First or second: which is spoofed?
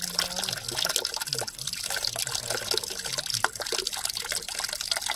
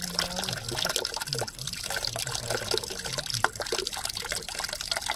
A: second